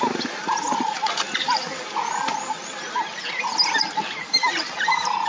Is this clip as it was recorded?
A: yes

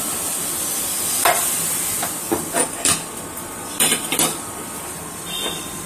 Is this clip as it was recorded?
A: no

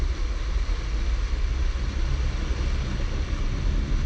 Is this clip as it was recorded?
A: yes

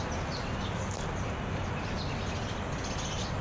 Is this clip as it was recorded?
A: yes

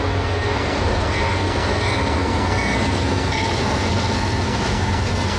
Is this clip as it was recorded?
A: no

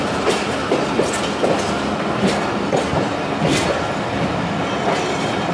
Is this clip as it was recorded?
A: yes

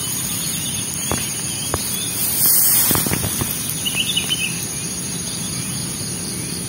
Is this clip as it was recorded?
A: yes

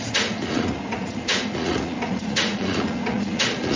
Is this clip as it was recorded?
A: no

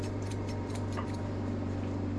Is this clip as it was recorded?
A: no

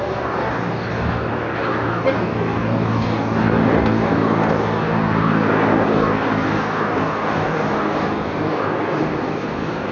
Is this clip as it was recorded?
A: no